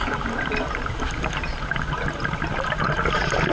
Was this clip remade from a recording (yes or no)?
no